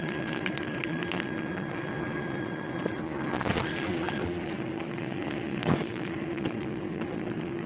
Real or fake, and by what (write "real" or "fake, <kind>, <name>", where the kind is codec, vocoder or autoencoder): fake, vocoder, Vocos